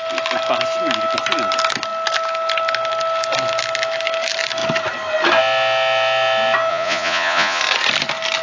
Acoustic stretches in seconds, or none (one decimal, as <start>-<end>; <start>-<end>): 0.0-6.7; 7.6-8.4